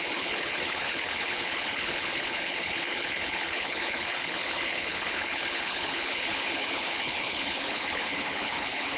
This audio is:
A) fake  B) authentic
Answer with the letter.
A